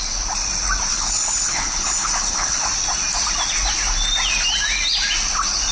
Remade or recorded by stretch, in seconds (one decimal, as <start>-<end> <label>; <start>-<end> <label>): 0.0-0.9 recorded; 0.9-2.6 remade; 2.6-5.7 recorded